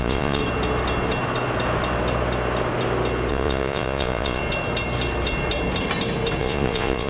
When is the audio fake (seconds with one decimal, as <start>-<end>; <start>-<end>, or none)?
0.0-0.4; 3.3-4.4; 6.4-7.1